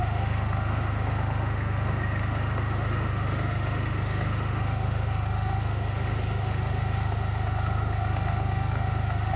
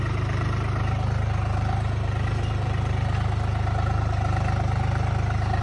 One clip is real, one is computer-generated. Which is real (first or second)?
second